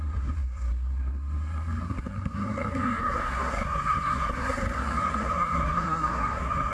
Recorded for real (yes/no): no